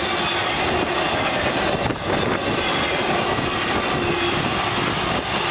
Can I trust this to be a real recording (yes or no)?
yes